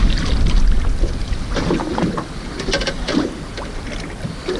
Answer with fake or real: fake